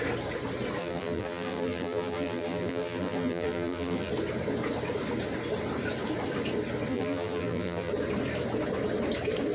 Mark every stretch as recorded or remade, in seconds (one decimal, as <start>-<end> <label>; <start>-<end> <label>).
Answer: 0.0-0.8 recorded; 0.8-4.1 remade; 4.1-6.9 recorded; 6.9-7.9 remade; 7.9-9.5 recorded